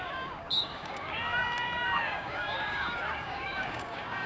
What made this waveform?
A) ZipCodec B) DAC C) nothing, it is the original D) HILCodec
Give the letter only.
B